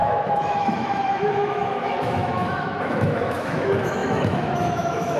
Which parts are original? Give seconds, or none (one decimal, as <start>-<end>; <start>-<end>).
none